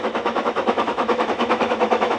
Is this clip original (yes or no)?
no